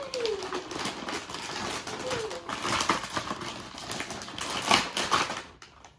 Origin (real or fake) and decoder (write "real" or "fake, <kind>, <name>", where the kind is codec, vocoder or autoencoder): real